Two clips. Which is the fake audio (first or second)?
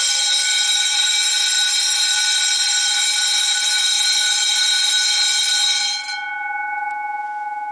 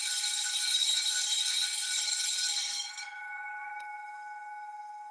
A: second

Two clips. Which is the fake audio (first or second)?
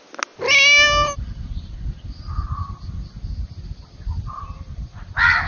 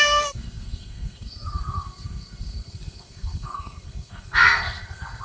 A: second